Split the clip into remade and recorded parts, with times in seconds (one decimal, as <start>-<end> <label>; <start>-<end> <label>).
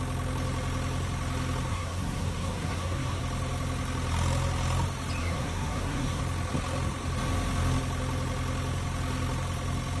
0.0-1.7 recorded; 1.7-3.2 remade; 3.2-5.2 recorded; 5.2-6.2 remade; 6.2-10.0 recorded